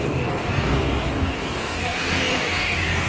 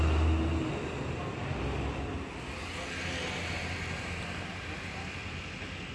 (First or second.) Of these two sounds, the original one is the second